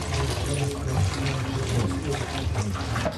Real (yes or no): yes